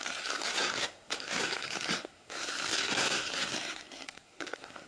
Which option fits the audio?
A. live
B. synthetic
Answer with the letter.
B